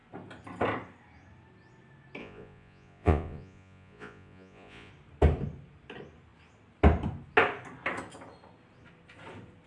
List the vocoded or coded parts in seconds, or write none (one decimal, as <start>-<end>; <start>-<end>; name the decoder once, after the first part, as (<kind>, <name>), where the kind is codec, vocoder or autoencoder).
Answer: 2.2-4.9 (vocoder, Vocos)